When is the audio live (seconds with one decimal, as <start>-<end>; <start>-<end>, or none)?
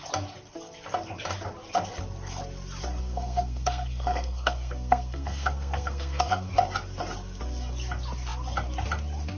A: 0.0-3.0; 6.5-9.4